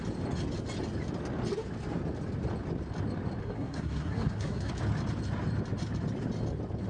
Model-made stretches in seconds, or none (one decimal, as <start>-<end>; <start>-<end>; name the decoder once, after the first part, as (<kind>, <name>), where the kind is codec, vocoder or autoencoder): 3.4-4.7 (codec, SNAC)